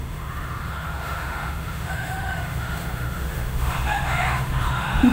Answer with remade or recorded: remade